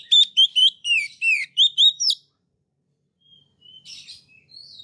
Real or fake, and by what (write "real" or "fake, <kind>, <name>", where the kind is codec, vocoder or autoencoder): fake, vocoder, BigVGAN v2